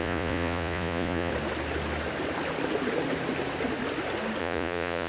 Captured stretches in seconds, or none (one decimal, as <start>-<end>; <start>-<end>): 1.3-4.4